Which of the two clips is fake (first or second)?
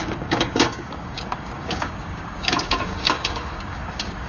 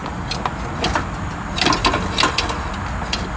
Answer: first